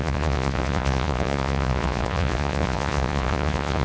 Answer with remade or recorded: remade